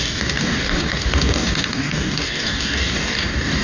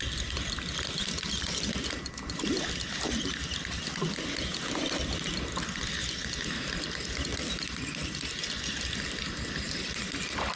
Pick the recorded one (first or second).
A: second